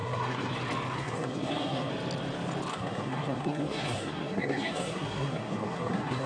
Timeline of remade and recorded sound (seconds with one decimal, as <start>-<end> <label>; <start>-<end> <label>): 0.0-0.5 remade; 0.5-1.0 recorded; 1.0-1.9 remade; 1.9-2.7 recorded; 2.7-6.3 remade